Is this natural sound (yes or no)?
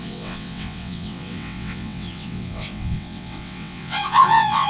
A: no